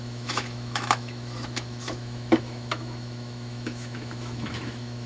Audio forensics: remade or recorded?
remade